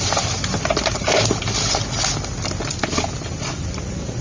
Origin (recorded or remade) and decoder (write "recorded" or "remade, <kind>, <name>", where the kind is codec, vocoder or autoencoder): recorded